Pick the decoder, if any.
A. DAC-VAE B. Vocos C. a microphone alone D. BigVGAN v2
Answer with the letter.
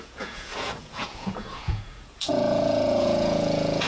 B